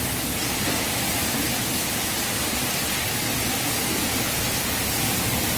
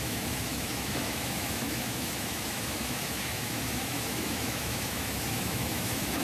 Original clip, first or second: first